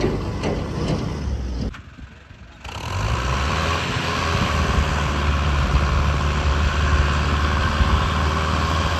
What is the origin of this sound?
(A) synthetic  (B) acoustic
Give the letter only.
B